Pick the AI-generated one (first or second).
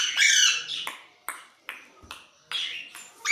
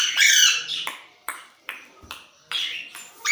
second